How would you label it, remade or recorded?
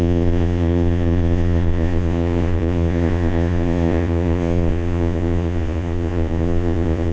remade